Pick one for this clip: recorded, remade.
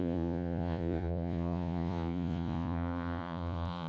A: remade